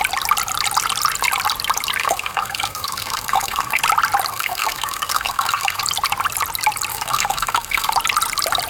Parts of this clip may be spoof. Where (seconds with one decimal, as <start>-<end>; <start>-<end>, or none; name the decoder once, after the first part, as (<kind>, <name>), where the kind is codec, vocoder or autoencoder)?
2.0-3.8 (codec, SNAC); 4.3-5.8; 6.9-7.9